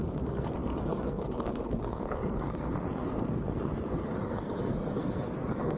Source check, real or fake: fake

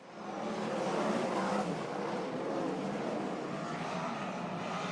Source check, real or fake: real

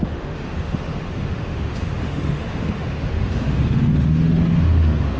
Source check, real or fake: fake